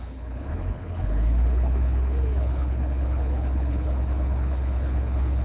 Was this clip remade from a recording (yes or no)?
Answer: yes